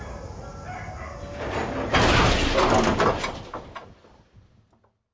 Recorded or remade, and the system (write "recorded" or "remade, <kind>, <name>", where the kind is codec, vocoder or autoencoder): recorded